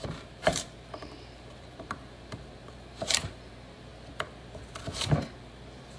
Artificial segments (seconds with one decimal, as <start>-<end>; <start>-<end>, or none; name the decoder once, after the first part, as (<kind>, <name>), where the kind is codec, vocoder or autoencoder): 0.0-3.9 (vocoder, BigVGAN v2); 4.4-6.0